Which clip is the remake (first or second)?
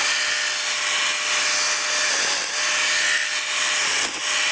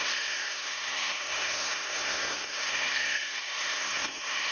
second